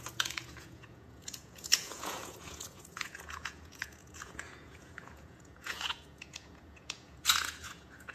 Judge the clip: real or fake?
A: fake